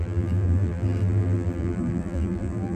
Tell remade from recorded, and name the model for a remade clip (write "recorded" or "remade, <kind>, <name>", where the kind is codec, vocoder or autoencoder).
remade, vocoder, BigVGAN v2